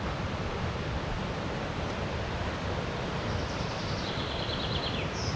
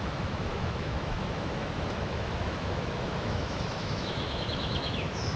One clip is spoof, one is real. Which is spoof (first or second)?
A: second